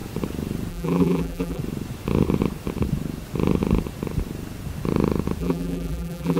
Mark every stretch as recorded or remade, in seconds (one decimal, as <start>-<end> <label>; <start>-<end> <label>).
0.0-0.7 recorded; 0.7-1.6 remade; 1.6-5.4 recorded; 5.4-6.4 remade